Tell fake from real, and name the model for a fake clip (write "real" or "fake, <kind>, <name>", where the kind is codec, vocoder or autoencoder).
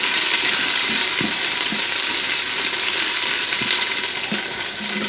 real